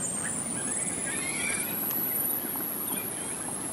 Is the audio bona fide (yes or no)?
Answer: yes